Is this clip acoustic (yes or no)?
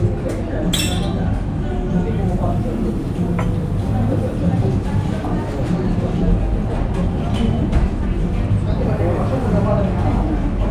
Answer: yes